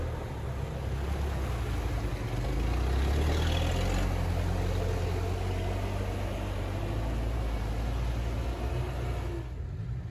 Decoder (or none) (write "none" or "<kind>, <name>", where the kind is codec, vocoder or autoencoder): none